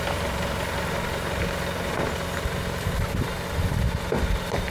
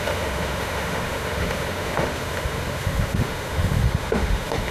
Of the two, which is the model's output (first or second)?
second